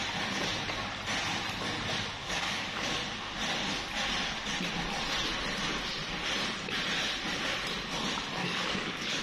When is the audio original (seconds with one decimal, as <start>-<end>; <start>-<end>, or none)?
0.0-2.2; 2.9-8.4